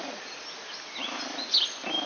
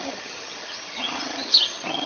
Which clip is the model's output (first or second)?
second